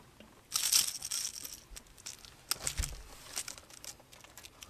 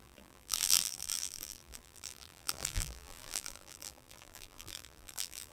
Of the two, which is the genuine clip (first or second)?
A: first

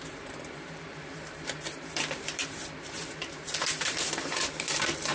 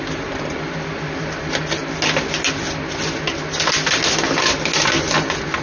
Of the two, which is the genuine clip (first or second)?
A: second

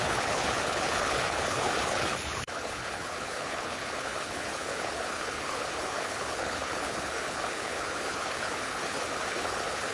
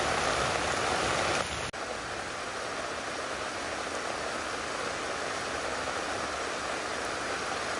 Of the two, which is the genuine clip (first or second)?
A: second